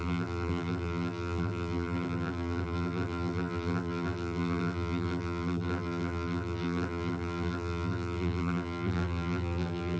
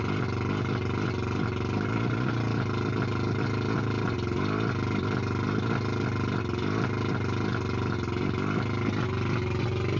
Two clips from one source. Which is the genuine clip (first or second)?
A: second